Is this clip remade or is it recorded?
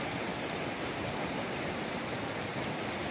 recorded